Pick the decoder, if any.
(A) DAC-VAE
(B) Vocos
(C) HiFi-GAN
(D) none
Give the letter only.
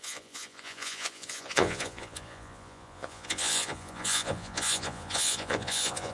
B